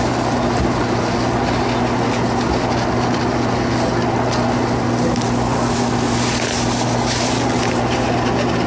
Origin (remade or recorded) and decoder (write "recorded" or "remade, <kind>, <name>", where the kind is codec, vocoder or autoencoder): recorded